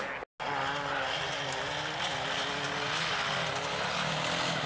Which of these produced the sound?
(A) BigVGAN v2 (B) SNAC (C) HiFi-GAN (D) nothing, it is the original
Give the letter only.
D